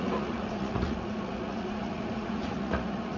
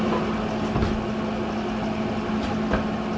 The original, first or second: second